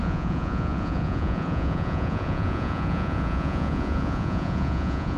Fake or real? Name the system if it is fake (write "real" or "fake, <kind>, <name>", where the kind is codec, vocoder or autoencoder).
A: fake, vocoder, Vocos